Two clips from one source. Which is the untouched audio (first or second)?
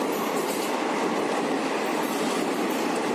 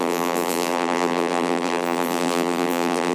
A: first